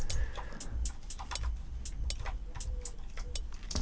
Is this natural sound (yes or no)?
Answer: yes